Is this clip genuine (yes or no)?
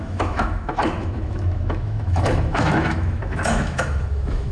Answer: no